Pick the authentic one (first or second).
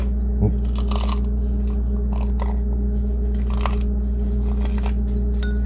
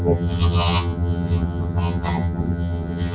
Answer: first